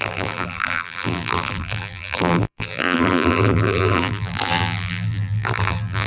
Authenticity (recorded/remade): remade